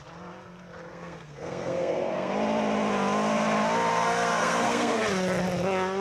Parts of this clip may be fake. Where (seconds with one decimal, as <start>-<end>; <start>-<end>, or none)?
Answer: 0.9-2.3; 3.9-5.0